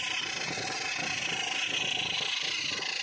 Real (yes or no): yes